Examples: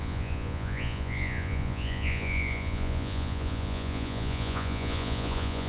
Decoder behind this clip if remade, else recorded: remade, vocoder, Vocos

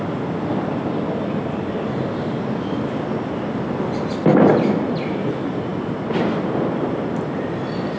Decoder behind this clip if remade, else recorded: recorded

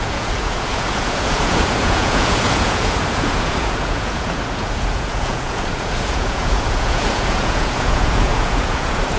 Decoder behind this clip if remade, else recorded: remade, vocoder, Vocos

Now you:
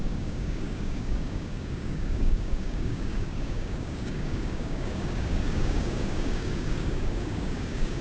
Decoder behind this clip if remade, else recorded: remade, codec, DAC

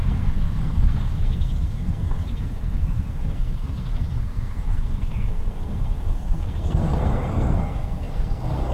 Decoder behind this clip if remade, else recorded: remade, codec, SNAC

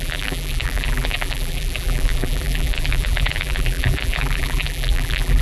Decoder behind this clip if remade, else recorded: remade, vocoder, BigVGAN v2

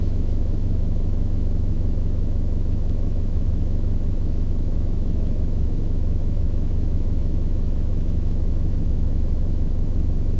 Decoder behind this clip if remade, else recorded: remade, autoencoder, DAC-VAE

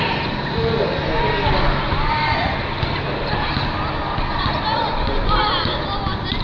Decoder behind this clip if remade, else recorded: recorded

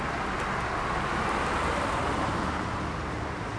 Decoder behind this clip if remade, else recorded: recorded